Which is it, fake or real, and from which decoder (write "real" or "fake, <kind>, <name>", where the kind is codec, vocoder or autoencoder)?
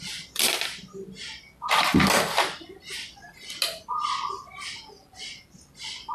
real